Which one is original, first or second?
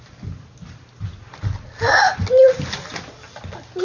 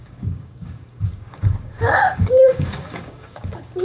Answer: first